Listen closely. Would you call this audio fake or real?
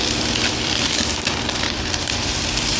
fake